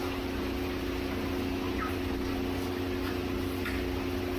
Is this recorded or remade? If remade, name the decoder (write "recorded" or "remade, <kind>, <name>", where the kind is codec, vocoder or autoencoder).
recorded